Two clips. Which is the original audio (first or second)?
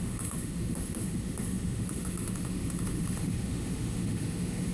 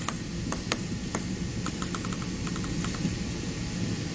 second